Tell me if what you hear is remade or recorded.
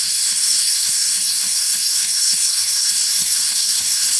remade